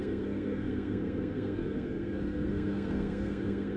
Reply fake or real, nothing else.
fake